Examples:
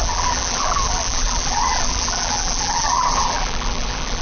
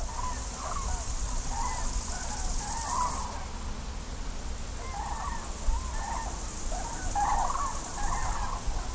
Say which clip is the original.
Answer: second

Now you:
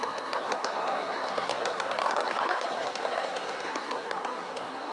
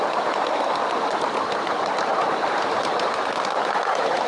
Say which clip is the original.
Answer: second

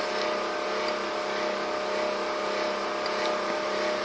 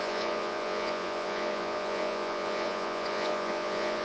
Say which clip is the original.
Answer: first